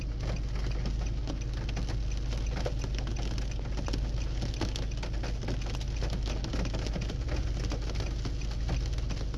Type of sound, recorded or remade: recorded